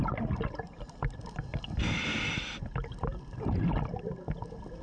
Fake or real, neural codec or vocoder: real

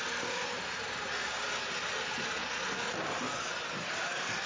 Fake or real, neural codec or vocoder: real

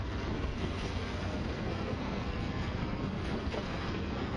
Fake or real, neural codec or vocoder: fake, codec, SNAC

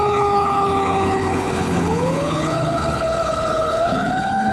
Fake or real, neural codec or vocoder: fake, codec, HILCodec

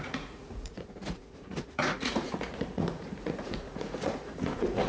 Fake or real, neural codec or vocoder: fake, vocoder, Vocos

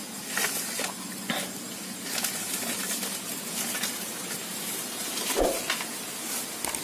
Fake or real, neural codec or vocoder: real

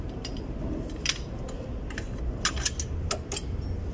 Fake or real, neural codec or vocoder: real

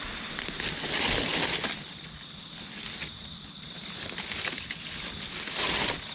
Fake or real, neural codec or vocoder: real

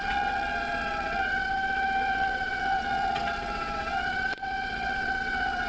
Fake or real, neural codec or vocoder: fake, vocoder, WaveNeXt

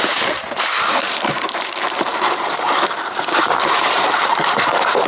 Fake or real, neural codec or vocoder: fake, vocoder, BigVGAN v2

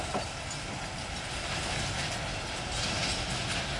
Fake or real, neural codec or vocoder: real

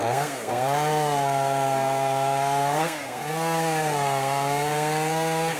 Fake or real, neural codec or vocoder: fake, codec, SNAC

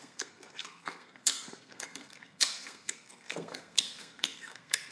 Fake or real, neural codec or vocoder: fake, codec, SNAC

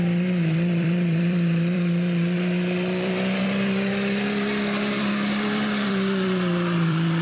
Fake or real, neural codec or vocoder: fake, vocoder, BigVGAN v2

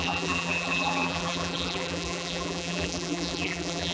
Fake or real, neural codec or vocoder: fake, vocoder, BigVGAN v2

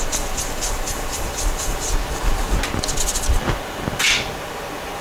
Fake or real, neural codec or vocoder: real